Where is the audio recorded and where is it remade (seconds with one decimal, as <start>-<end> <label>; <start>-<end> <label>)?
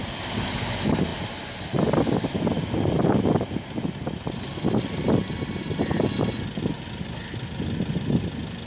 0.0-8.7 recorded